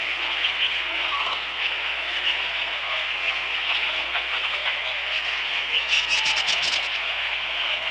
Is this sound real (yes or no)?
no